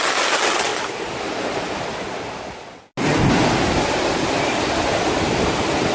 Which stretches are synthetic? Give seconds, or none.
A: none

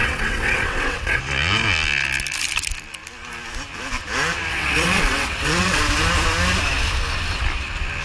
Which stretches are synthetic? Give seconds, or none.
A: 0.0-1.2 (vocoder, WaveNeXt); 4.5-5.8

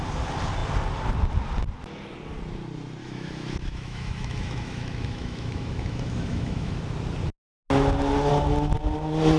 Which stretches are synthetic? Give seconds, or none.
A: 3.0-6.8 (autoencoder, DAC-VAE)

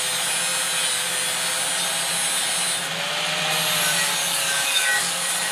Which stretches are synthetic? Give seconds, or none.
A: 4.2-5.5 (codec, DAC)

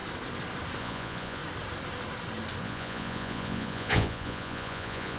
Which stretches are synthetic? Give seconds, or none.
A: 0.8-1.4 (vocoder, Vocos); 2.6-5.2